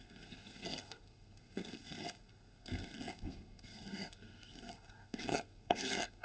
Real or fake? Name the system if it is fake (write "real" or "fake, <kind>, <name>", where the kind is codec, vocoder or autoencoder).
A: fake, codec, SNAC